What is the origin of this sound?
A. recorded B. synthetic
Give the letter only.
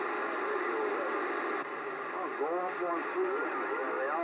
A